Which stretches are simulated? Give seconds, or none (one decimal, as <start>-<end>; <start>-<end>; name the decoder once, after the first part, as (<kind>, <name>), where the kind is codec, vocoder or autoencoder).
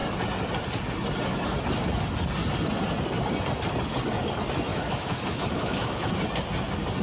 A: 4.7-6.1 (autoencoder, DAC-VAE)